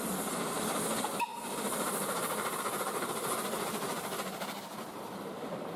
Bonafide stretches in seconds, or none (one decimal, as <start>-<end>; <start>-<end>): 0.0-1.3; 2.6-5.8